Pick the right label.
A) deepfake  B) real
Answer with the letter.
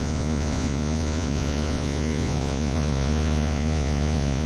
A